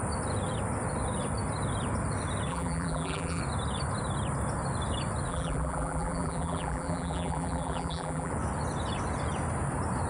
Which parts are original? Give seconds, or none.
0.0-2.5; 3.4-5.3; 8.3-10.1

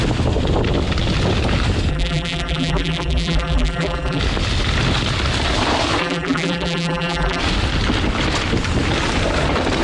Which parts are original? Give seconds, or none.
0.0-1.9; 4.2-6.0; 7.4-9.8